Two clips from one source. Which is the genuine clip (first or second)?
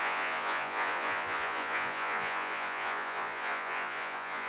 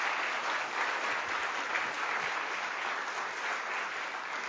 second